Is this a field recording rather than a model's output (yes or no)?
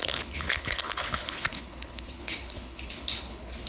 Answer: no